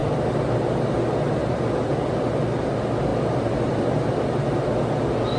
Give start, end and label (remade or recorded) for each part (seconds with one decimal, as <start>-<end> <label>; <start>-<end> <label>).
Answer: 0.0-1.0 remade; 1.0-1.4 recorded; 1.4-2.1 remade; 2.1-3.1 recorded; 3.1-4.2 remade; 4.2-5.4 recorded